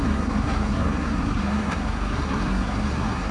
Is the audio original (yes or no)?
no